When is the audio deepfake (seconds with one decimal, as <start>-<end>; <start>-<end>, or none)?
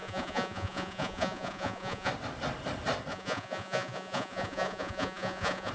0.0-2.1; 3.1-5.7